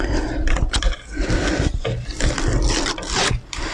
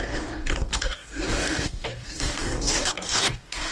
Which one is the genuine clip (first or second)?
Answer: first